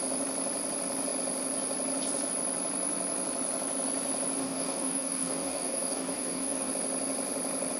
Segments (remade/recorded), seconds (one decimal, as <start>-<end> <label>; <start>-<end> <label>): 0.0-4.4 recorded; 4.4-6.7 remade; 6.7-7.8 recorded